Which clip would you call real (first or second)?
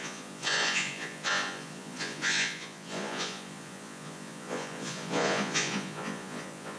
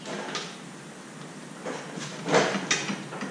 second